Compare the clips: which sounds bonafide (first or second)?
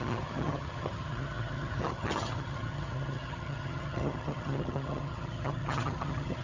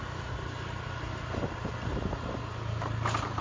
second